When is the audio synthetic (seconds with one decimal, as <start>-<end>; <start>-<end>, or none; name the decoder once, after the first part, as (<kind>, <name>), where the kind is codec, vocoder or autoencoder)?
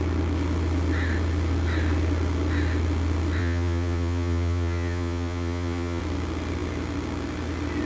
3.4-6.0 (vocoder, Vocos)